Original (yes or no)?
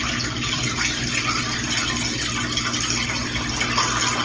yes